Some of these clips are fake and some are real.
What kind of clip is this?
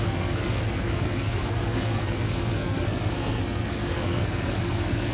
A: fake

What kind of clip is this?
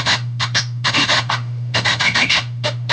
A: fake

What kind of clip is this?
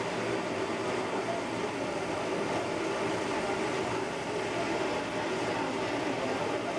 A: real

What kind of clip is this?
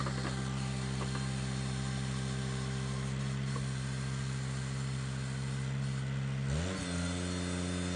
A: real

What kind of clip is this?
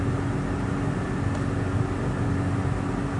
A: real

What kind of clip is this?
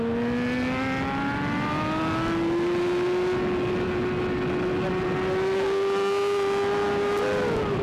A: real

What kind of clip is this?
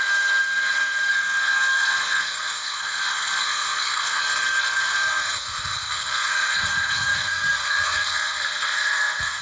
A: fake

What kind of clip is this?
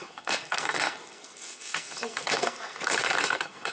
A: fake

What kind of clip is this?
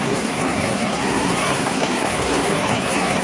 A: fake